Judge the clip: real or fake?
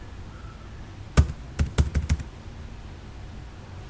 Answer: real